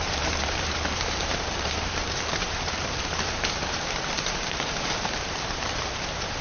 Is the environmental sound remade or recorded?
remade